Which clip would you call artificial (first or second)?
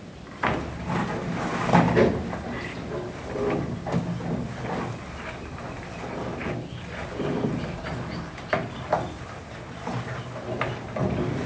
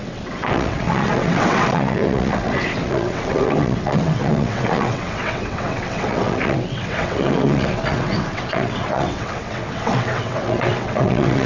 second